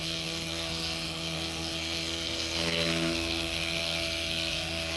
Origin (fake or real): fake